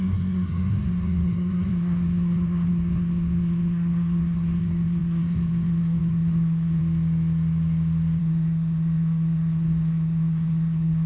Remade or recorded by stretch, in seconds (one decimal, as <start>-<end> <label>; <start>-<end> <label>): 0.0-6.8 remade; 6.8-8.2 recorded; 8.2-11.1 remade

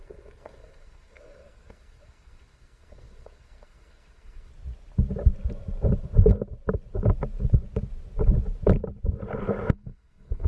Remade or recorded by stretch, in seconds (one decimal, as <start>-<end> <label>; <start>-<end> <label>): 0.0-4.5 remade; 4.5-9.7 recorded; 9.7-10.5 remade

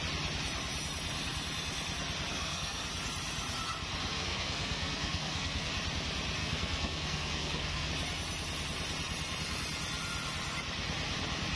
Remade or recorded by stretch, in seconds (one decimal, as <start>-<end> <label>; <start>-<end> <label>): 0.0-2.3 recorded; 2.3-2.9 remade; 2.9-4.1 recorded; 4.1-5.7 remade; 5.7-6.4 recorded; 6.4-7.9 remade; 7.9-11.6 recorded

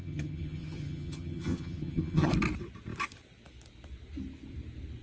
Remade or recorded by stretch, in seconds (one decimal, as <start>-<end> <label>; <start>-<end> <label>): 0.0-2.3 remade; 2.3-5.0 recorded